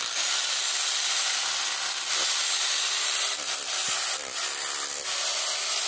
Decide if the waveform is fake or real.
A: real